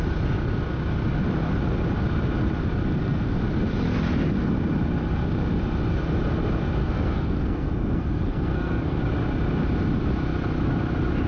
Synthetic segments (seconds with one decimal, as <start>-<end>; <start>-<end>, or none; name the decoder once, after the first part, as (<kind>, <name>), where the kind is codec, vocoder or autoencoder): 2.9-3.4 (codec, SNAC); 6.8-9.0